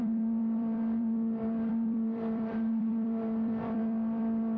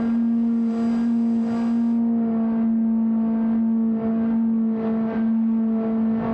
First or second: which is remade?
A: first